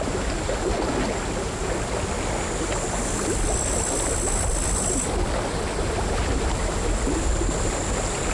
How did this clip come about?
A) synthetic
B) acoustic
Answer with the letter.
B